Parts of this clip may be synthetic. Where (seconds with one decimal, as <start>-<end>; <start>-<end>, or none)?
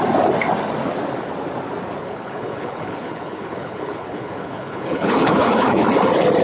2.0-5.8